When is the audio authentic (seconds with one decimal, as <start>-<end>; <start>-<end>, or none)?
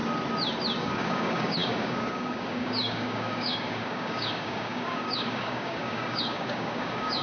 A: 0.0-0.8